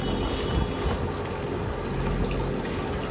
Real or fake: real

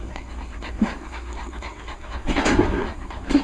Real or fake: fake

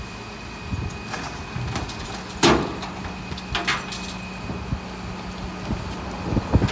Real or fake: real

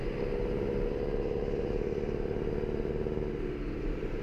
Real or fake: real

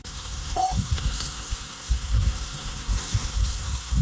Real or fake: fake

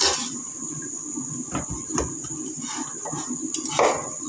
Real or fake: real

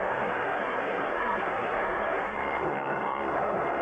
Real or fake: fake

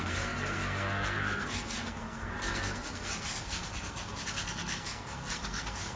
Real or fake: fake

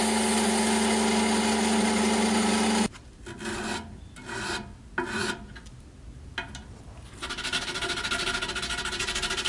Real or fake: real